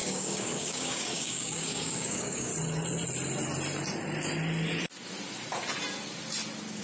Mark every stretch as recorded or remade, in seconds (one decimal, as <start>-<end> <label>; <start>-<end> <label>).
0.0-2.5 remade; 2.5-6.8 recorded